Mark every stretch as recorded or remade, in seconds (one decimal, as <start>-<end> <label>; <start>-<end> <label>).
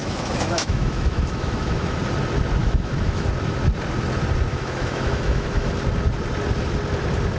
0.0-2.0 remade; 2.0-2.6 recorded; 2.6-3.3 remade; 3.3-4.5 recorded; 4.5-5.7 remade; 5.7-7.4 recorded